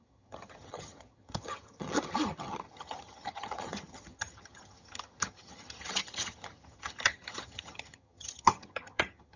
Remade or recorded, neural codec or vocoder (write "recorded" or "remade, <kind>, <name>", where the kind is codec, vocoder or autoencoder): remade, vocoder, HiFi-GAN